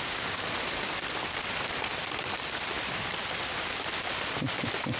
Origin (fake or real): real